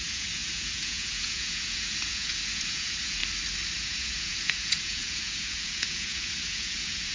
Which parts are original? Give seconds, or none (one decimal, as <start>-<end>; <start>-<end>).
3.2-3.8